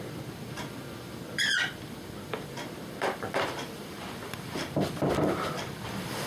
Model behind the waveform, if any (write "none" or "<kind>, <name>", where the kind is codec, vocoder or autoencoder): vocoder, BigVGAN v2